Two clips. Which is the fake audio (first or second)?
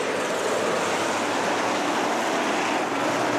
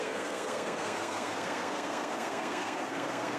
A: second